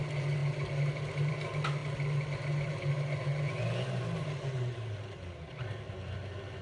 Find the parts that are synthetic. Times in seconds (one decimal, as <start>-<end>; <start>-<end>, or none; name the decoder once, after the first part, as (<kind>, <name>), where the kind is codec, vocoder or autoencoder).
none